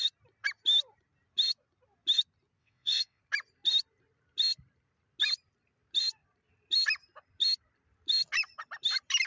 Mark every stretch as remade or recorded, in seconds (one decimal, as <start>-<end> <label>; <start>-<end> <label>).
0.0-2.6 recorded; 2.6-3.2 remade; 3.2-9.3 recorded